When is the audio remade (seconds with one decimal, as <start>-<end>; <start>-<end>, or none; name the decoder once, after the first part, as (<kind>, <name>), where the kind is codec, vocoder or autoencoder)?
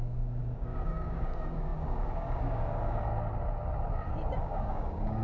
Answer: 0.0-3.1 (codec, DAC); 4.4-5.2